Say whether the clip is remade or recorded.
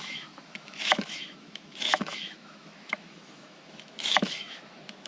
remade